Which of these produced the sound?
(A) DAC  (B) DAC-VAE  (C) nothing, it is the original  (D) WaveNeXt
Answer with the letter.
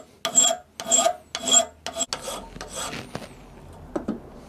C